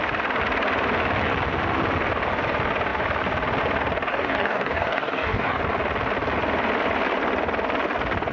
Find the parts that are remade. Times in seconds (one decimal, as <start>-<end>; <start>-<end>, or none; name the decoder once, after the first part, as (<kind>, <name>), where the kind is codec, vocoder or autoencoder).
4.1-5.6 (codec, DAC)